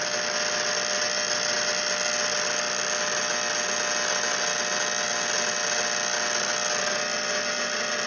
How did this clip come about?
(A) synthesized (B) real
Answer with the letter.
B